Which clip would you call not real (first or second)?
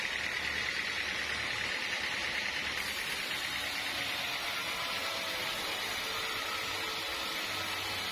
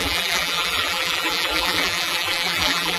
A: second